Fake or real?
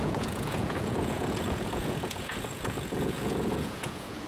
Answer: fake